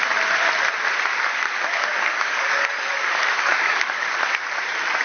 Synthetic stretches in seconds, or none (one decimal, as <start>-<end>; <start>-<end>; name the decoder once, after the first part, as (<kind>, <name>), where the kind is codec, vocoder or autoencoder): 1.1-4.1 (codec, DAC)